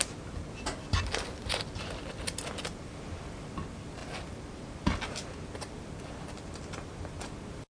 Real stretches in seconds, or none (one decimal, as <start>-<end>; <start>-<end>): 0.0-7.7

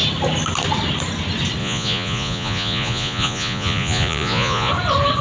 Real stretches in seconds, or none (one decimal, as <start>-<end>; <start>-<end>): 0.0-1.6; 4.7-5.2

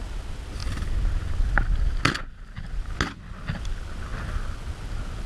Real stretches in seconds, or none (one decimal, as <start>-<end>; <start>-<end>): 0.0-5.3

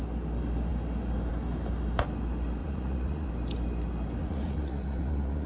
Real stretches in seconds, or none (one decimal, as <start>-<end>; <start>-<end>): 0.0-2.6; 3.3-4.2